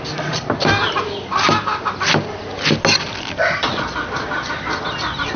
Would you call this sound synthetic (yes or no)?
no